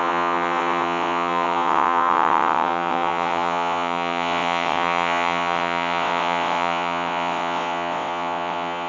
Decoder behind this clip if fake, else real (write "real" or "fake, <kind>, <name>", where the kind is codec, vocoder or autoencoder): fake, vocoder, WaveNeXt